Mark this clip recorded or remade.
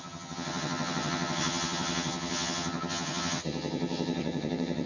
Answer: remade